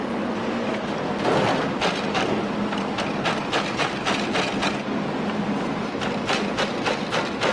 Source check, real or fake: real